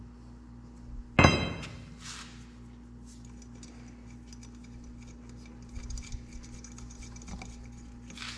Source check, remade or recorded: recorded